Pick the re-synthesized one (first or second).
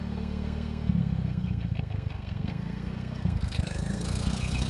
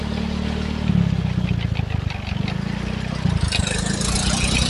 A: first